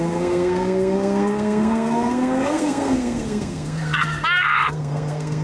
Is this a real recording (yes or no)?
no